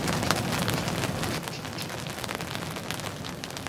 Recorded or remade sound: recorded